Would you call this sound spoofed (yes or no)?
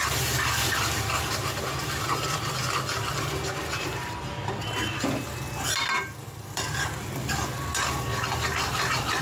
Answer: yes